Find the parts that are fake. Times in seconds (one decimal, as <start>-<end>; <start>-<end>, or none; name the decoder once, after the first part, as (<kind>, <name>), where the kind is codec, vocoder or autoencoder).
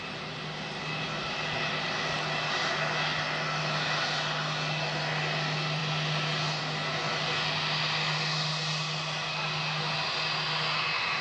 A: none